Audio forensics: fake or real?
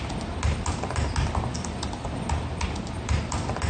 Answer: real